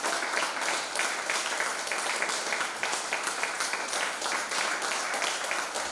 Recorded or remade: recorded